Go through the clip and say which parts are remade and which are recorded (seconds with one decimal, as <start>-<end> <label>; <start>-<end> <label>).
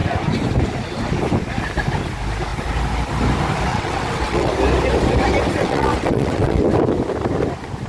0.0-3.7 recorded; 3.7-4.5 remade; 4.5-5.6 recorded; 5.6-6.7 remade; 6.7-7.9 recorded